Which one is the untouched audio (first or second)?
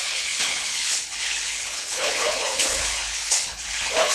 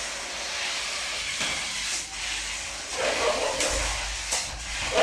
second